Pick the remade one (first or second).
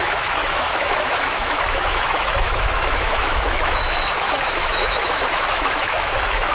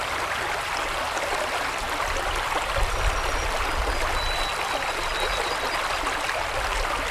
first